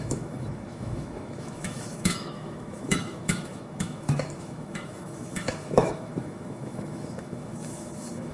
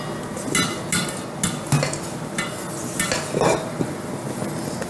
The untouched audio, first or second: second